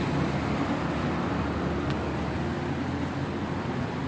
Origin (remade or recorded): recorded